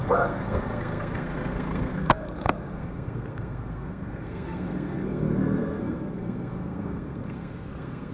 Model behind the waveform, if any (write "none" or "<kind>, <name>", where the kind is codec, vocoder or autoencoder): codec, SNAC